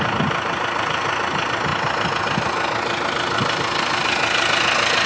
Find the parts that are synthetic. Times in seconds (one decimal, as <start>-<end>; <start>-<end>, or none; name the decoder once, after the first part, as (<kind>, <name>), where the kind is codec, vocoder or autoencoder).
none